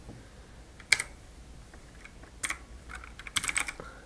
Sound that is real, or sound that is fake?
real